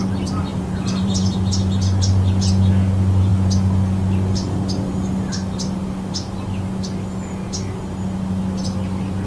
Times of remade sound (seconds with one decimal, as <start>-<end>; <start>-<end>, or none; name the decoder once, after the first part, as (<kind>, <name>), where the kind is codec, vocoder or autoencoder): 0.5-1.4 (vocoder, BigVGAN v2)

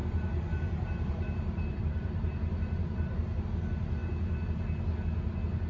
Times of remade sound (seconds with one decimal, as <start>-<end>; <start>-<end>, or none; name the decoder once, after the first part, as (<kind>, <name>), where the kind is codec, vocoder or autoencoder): 0.0-3.4 (vocoder, BigVGAN v2)

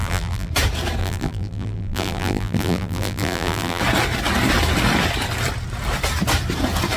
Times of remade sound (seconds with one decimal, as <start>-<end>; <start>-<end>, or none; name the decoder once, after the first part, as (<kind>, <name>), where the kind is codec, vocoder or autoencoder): 0.0-0.5 (vocoder, BigVGAN v2); 1.0-3.8

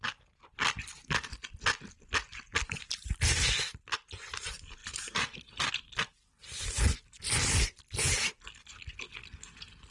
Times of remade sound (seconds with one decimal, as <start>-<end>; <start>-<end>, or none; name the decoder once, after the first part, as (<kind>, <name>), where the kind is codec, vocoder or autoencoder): 4.8-5.7 (vocoder, BigVGAN v2)

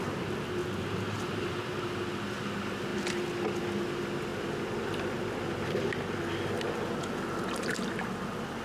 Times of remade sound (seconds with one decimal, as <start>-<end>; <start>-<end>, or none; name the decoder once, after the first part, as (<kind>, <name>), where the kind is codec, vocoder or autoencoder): 0.6-1.5 (vocoder, BigVGAN v2)

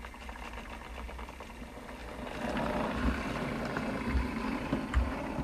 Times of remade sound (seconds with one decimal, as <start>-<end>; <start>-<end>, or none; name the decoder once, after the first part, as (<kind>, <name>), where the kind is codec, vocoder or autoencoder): none

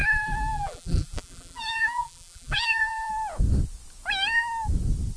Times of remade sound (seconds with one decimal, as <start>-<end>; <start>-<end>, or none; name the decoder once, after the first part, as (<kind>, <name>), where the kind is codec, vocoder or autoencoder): 0.0-3.1 (vocoder, BigVGAN v2)

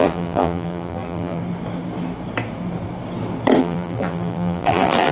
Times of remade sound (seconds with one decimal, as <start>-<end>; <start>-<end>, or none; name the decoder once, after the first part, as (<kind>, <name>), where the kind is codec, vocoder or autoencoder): 0.0-1.4 (vocoder, BigVGAN v2); 3.6-5.1